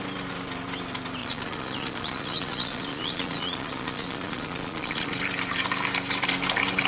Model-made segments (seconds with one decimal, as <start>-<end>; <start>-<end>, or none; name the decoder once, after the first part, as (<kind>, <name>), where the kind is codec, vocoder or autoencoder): 1.2-5.2 (vocoder, Vocos)